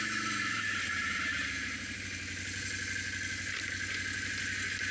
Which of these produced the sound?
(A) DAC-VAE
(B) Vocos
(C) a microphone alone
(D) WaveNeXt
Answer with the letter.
C